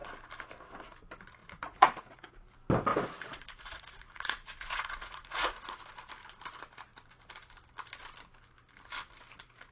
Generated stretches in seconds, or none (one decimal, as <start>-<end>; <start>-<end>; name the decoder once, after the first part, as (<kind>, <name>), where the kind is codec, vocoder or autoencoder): 1.4-2.3 (vocoder, Vocos); 2.9-5.8